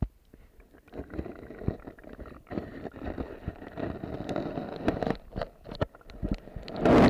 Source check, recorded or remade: recorded